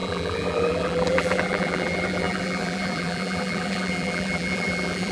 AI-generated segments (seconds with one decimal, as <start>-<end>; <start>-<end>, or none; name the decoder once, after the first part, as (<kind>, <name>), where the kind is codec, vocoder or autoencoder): 0.0-5.1 (vocoder, BigVGAN v2)